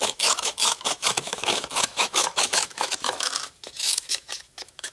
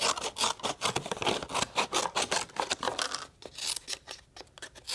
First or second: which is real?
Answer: second